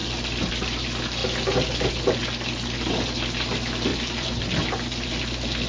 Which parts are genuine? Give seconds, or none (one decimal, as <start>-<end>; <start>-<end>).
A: 0.0-3.9; 4.4-5.7